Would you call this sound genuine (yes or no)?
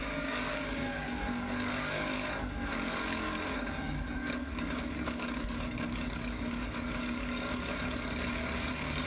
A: no